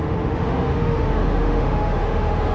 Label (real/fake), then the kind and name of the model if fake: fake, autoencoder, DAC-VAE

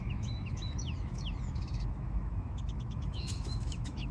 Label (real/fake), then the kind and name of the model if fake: fake, autoencoder, DAC-VAE